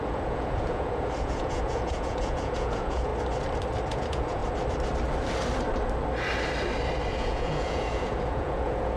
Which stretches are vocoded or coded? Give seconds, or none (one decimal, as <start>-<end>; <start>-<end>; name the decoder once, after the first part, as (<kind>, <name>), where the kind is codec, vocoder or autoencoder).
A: 0.0-3.1 (vocoder, Vocos); 3.9-4.4; 7.1-9.0